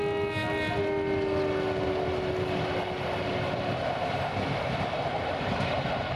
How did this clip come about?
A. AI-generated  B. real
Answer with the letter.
B